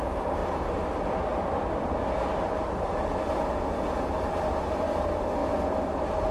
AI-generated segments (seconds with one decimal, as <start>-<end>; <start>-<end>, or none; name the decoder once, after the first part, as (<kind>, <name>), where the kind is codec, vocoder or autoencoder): 0.0-0.4 (vocoder, BigVGAN v2); 4.2-5.4